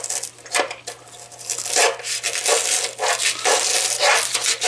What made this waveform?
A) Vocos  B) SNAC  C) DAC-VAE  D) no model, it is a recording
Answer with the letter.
D